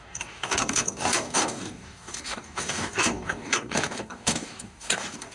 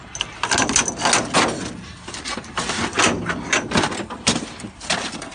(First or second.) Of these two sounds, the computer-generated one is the first